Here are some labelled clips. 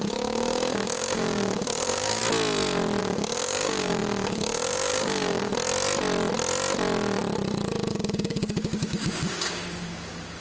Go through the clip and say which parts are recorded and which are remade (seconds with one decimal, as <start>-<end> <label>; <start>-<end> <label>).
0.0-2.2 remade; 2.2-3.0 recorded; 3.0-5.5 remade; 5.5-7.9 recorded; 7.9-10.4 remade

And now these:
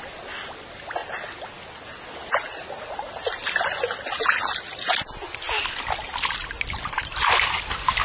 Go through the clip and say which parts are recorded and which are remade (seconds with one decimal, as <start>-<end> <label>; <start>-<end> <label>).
0.0-8.0 recorded

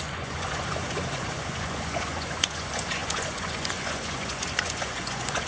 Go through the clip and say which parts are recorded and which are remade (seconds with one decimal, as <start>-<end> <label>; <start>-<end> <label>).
0.0-5.5 remade